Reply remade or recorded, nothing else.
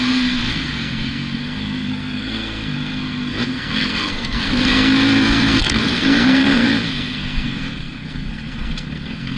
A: remade